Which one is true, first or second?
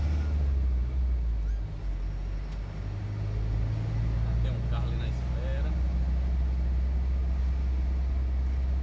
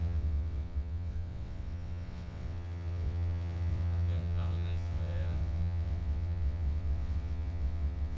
first